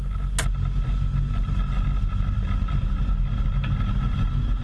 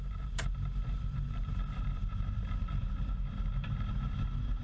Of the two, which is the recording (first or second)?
first